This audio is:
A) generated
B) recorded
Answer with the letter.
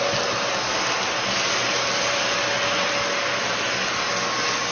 B